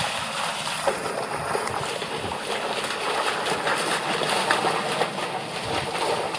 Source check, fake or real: real